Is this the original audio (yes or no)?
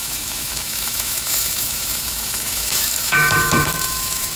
no